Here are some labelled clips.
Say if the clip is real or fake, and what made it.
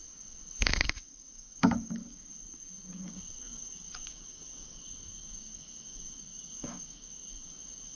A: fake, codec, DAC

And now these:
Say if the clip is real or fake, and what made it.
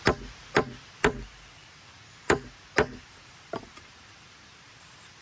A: real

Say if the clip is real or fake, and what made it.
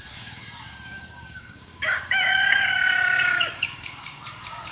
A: fake, codec, DAC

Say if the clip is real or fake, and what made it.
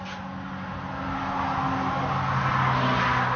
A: real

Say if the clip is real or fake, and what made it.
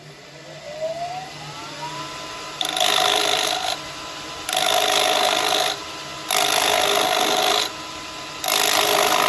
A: real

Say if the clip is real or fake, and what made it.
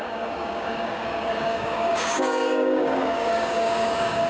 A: fake, codec, DAC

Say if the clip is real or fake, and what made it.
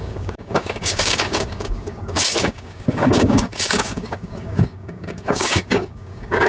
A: fake, codec, DAC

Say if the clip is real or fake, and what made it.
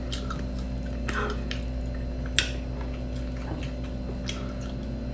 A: real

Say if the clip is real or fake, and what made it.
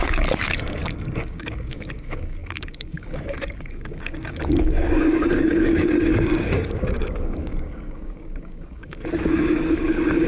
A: fake, codec, DAC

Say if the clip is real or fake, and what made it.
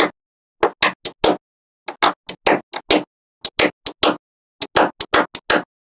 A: real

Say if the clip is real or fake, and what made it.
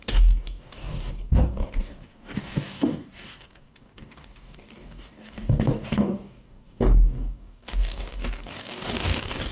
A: fake, codec, DAC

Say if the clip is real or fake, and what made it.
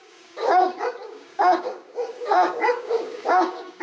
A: fake, codec, DAC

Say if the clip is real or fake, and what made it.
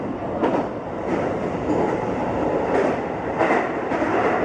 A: real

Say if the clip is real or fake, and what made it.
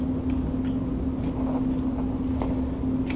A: real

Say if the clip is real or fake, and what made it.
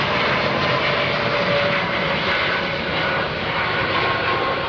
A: real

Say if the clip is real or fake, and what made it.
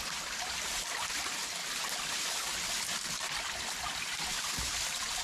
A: real